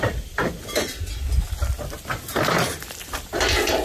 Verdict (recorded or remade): recorded